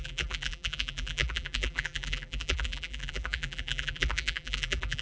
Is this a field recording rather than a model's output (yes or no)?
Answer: no